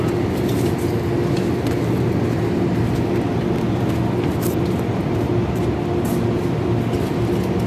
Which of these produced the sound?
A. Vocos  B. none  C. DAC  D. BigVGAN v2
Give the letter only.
B